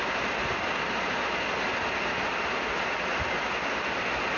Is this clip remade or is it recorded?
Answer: recorded